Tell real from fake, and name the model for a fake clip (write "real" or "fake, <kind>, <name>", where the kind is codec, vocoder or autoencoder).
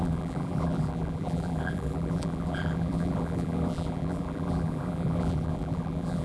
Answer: fake, vocoder, BigVGAN v2